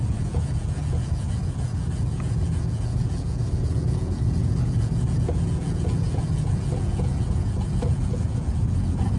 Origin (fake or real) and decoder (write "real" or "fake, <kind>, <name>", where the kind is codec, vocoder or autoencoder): fake, vocoder, Vocos